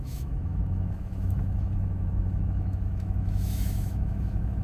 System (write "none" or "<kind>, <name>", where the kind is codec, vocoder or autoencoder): autoencoder, DAC-VAE